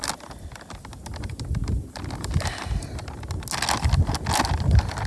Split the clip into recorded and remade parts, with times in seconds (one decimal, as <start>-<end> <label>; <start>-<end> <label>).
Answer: 0.0-5.1 recorded